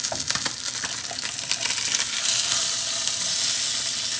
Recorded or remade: recorded